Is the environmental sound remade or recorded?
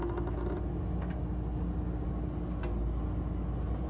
recorded